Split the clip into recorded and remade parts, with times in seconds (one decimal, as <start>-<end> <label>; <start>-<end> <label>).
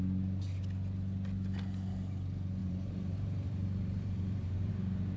0.0-2.6 recorded; 2.6-4.7 remade; 4.7-5.2 recorded